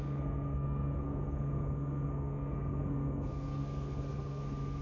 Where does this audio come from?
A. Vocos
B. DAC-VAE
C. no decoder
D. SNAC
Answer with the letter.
D